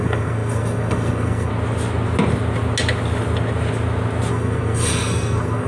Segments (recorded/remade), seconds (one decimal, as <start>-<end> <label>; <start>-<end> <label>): 0.0-1.5 remade; 1.5-4.3 recorded; 4.3-5.7 remade